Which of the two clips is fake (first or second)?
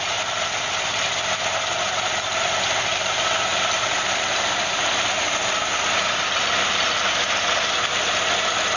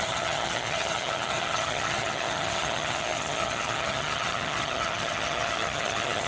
second